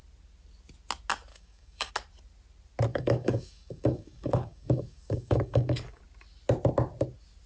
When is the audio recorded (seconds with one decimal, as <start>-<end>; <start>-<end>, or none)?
0.0-1.3; 1.9-2.9; 6.0-7.5